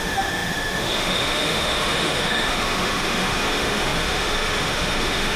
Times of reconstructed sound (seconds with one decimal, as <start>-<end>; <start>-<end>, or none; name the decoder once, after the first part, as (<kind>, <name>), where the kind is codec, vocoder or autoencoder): 0.0-5.4 (autoencoder, DAC-VAE)